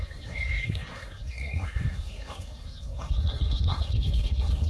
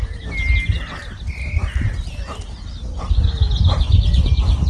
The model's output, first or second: first